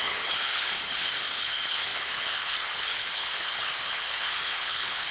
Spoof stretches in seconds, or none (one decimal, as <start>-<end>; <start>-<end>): 0.0-5.1